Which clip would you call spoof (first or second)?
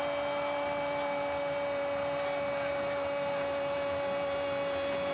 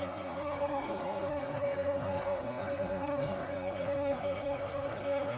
second